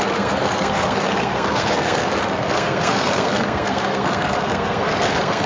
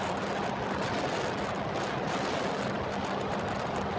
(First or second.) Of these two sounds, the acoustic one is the second